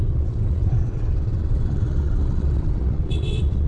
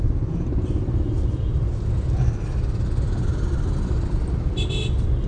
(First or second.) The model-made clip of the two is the first